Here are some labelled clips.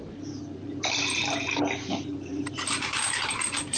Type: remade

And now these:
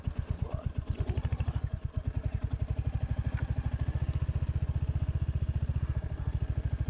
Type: recorded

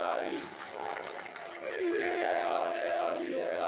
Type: remade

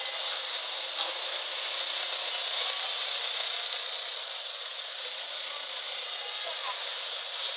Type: recorded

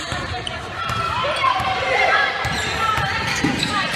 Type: remade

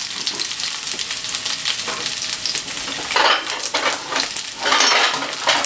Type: recorded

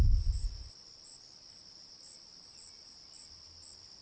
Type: remade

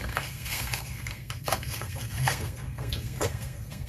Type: remade